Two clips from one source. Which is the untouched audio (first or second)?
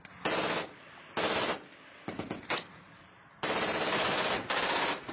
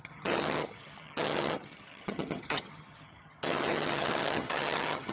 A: first